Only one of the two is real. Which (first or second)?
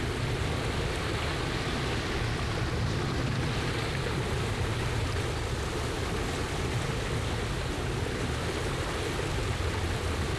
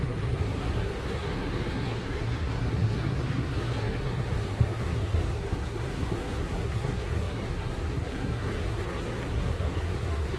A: first